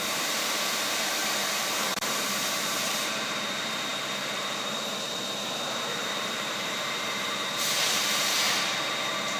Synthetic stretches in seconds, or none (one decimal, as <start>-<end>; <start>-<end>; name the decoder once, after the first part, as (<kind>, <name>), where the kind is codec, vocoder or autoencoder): 0.0-9.4 (vocoder, BigVGAN v2)